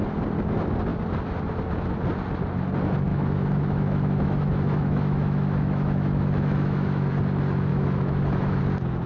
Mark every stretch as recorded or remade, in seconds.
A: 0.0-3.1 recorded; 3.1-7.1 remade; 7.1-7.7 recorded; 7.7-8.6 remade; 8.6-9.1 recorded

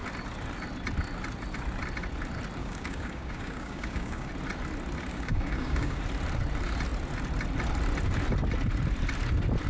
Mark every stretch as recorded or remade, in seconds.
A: 0.0-2.6 recorded; 2.6-4.3 remade; 4.3-5.1 recorded; 5.1-6.0 remade; 6.0-9.7 recorded

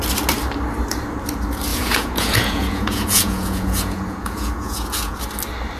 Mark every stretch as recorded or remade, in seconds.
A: 0.0-1.7 recorded; 1.7-5.2 remade; 5.2-5.8 recorded